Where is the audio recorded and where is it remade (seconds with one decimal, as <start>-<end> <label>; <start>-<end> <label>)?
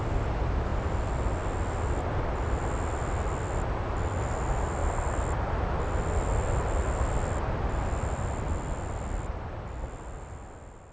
0.0-10.9 recorded